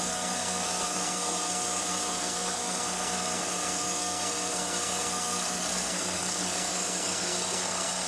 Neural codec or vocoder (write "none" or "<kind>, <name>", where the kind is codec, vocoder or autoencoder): codec, SNAC